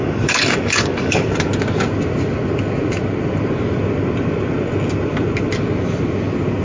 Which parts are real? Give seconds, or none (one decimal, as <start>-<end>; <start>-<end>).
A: 1.3-6.6